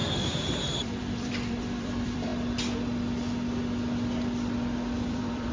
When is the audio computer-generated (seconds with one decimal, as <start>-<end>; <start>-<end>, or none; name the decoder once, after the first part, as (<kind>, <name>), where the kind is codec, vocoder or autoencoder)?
0.0-2.3 (vocoder, BigVGAN v2); 5.1-5.5

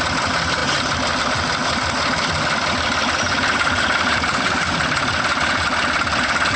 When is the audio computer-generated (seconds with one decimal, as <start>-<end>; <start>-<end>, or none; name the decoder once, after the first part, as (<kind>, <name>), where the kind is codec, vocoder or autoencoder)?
none

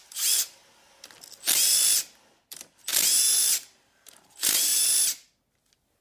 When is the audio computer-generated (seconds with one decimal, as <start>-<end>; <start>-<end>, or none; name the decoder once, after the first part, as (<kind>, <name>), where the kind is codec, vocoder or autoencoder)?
0.0-0.6 (vocoder, BigVGAN v2); 2.4-2.9; 3.5-4.7

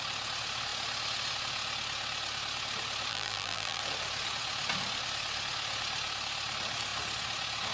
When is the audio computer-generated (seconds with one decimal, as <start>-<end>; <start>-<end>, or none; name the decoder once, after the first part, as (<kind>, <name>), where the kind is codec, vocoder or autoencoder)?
3.1-3.8 (vocoder, BigVGAN v2)

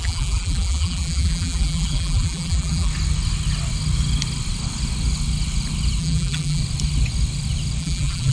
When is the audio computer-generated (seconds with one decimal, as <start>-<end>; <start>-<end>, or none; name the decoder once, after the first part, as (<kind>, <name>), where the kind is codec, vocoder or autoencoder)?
0.0-2.9 (vocoder, BigVGAN v2); 6.0-6.6; 7.8-8.3

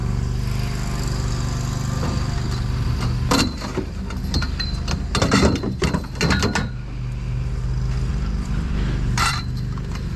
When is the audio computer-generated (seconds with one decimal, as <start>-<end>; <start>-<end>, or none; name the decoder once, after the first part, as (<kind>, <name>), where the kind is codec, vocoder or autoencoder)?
8.1-10.2 (vocoder, BigVGAN v2)

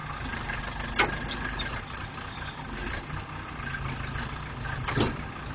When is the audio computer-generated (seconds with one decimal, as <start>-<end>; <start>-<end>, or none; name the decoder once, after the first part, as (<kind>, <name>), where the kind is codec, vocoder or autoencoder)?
0.0-0.6 (vocoder, BigVGAN v2)